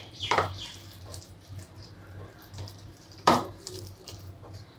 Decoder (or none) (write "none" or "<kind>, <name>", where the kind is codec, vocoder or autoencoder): vocoder, BigVGAN v2